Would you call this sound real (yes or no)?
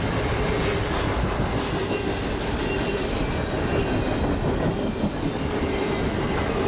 yes